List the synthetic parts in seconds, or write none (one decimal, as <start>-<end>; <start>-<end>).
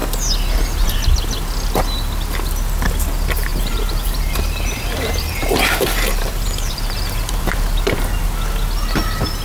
3.5-8.2